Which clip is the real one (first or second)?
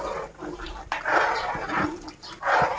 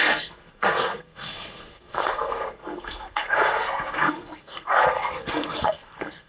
first